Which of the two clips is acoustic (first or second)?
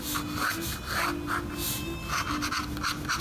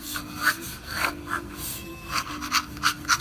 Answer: first